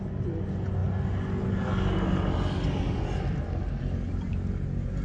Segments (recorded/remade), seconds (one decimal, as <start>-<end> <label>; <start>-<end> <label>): 0.0-5.0 recorded